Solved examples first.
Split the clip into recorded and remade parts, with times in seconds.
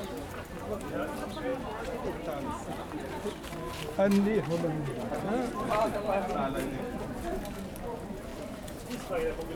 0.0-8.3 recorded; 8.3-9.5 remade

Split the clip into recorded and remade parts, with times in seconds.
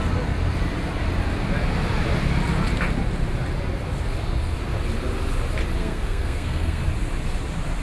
0.0-5.8 recorded; 5.8-6.8 remade; 6.8-7.8 recorded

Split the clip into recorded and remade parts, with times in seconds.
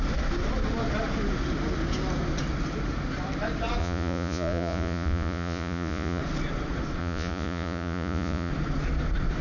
0.0-3.8 recorded; 3.8-6.2 remade; 6.2-7.0 recorded; 7.0-8.5 remade; 8.5-9.4 recorded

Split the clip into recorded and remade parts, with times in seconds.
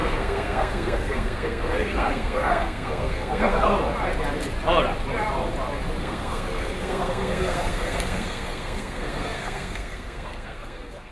0.0-3.7 remade; 3.7-6.0 recorded; 6.0-11.1 remade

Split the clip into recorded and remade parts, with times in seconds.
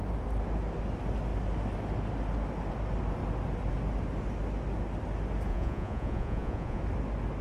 0.0-5.5 recorded; 5.5-6.8 remade; 6.8-7.4 recorded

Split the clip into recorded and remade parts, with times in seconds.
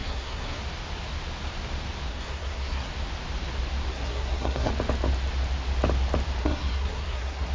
0.0-0.6 remade; 0.6-2.1 recorded; 2.1-2.9 remade; 2.9-3.9 recorded; 3.9-4.7 remade; 4.7-6.4 recorded; 6.4-7.5 remade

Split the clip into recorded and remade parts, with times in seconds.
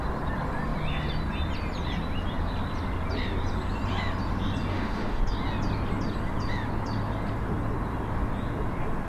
0.0-4.7 recorded; 4.7-5.2 remade; 5.2-9.1 recorded